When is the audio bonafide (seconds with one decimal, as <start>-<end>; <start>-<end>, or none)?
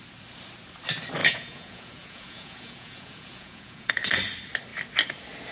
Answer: 0.0-1.2; 3.9-5.5